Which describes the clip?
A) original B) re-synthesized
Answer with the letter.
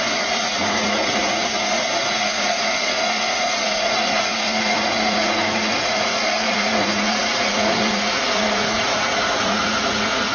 B